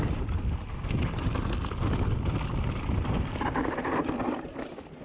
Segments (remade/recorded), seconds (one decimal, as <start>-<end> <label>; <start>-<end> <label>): 0.0-5.0 recorded